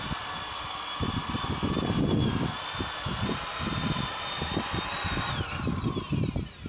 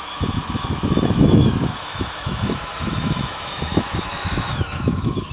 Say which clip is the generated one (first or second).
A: second